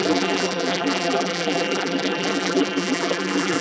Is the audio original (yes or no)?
no